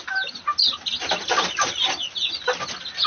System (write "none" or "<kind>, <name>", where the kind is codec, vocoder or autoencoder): none